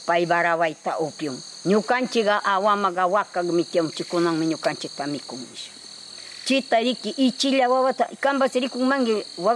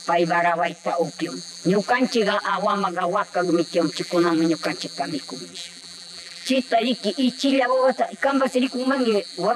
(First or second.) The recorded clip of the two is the first